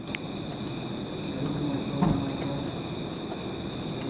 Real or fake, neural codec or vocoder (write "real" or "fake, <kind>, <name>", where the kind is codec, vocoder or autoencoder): real